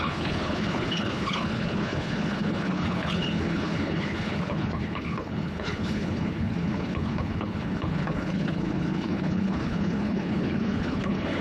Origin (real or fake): fake